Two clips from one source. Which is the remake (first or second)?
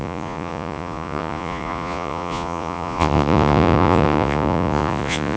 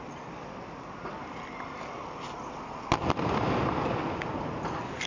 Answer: first